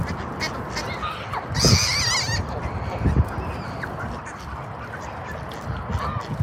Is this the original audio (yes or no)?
yes